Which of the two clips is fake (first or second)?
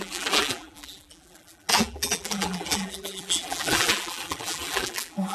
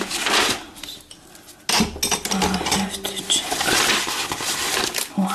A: first